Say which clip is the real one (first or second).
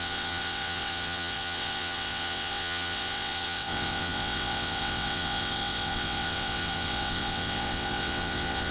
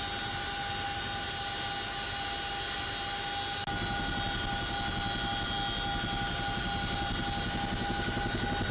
second